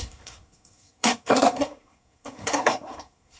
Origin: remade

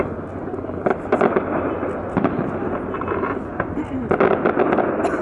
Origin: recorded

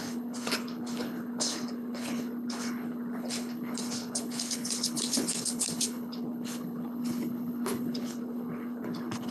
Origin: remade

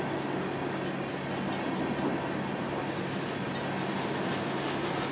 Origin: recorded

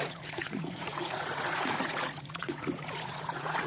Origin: remade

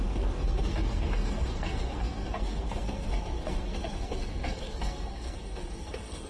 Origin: remade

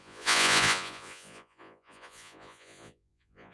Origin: remade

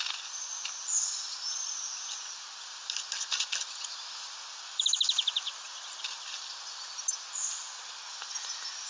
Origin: recorded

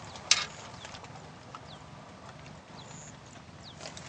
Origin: recorded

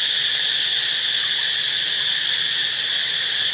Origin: recorded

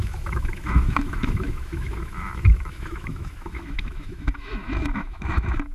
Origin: remade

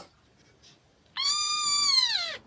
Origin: recorded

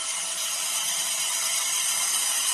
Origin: recorded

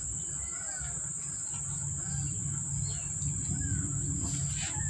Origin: recorded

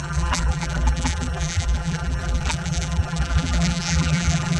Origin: remade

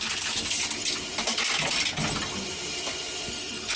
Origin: recorded